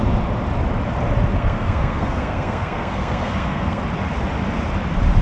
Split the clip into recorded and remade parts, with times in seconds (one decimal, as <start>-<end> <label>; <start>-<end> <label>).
0.0-1.3 recorded; 1.3-3.8 remade; 3.8-5.2 recorded